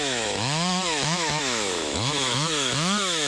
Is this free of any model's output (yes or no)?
no